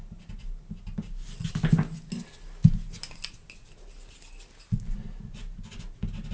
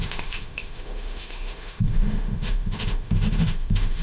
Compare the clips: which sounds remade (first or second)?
second